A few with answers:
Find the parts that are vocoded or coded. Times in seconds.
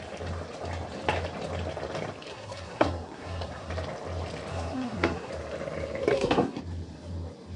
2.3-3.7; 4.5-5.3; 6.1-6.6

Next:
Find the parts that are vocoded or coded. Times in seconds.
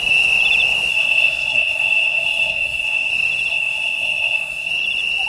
0.9-3.1; 3.5-4.7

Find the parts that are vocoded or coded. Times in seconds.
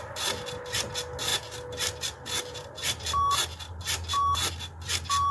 none